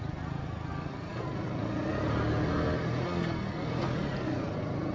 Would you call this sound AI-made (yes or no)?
no